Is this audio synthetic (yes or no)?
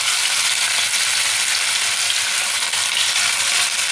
no